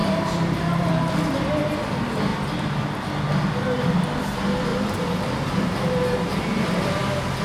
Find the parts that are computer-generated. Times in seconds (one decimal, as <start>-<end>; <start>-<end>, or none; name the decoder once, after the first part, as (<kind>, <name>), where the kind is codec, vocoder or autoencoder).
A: 0.0-0.9 (vocoder, BigVGAN v2); 4.7-6.7